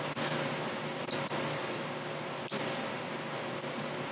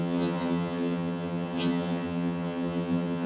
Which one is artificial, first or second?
second